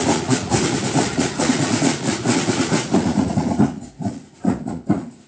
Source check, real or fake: fake